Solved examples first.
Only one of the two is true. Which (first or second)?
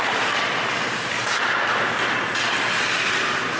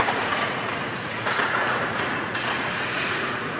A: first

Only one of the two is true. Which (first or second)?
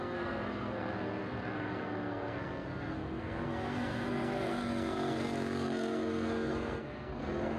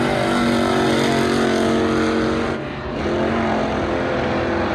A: second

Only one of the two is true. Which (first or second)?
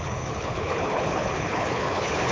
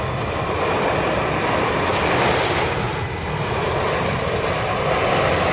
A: second